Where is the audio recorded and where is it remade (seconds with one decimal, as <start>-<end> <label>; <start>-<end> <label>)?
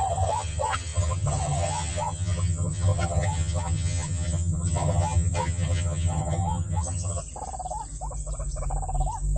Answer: 0.0-7.2 remade; 7.2-9.4 recorded